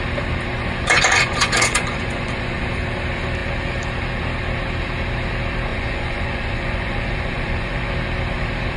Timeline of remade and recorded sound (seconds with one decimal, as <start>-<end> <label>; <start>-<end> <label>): 0.0-0.5 recorded; 0.5-2.7 remade; 2.7-5.7 recorded; 5.7-7.9 remade; 7.9-8.8 recorded